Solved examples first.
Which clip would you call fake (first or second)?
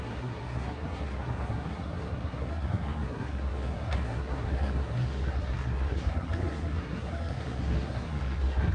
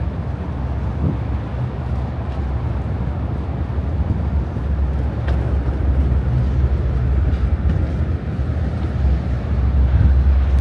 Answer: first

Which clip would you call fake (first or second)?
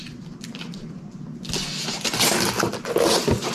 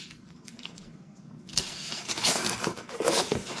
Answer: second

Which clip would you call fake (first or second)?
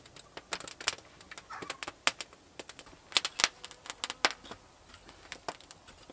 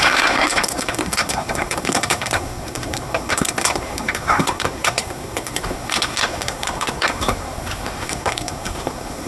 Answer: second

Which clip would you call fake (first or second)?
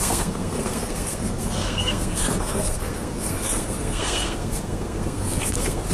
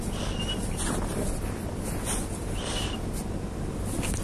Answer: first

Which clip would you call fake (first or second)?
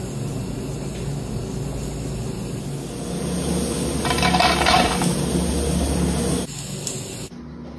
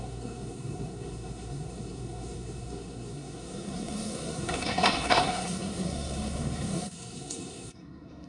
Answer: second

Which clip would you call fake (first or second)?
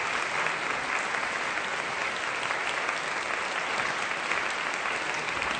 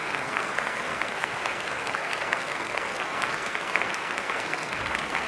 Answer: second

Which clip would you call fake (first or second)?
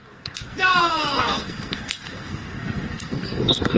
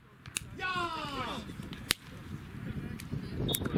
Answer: first